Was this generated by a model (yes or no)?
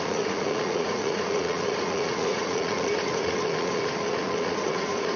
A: yes